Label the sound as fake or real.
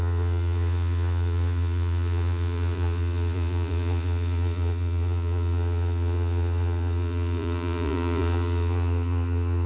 fake